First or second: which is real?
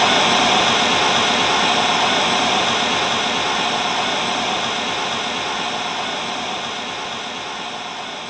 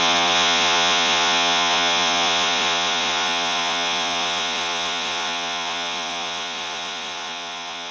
first